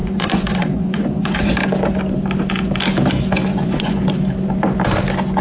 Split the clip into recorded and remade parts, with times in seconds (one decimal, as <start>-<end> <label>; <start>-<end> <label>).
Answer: 0.0-1.5 remade; 1.5-3.5 recorded; 3.5-4.0 remade; 4.0-5.4 recorded